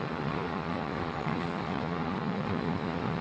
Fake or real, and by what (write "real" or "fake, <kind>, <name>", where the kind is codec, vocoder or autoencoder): fake, vocoder, Vocos